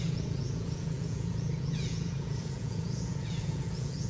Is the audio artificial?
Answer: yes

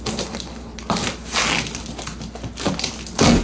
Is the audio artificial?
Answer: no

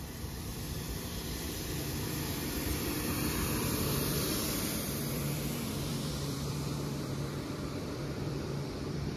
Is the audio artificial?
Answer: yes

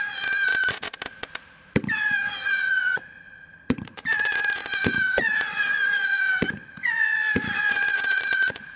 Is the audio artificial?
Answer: yes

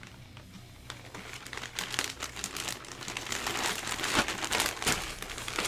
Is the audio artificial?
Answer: no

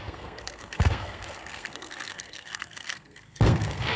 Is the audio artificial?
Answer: yes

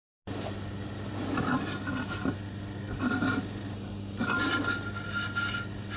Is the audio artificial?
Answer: no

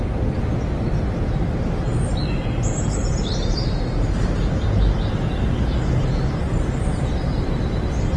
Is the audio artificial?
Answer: no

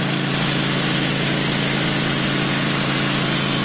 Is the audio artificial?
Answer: no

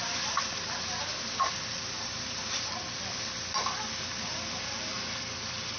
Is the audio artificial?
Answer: no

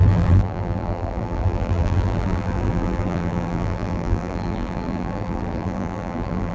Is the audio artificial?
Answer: yes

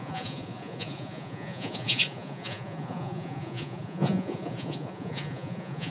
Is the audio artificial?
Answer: yes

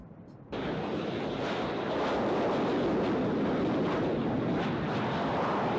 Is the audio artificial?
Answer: no